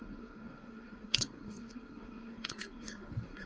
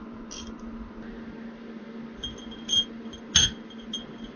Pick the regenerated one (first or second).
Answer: first